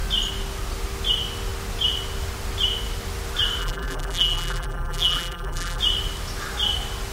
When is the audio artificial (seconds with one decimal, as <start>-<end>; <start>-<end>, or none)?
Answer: 3.6-5.8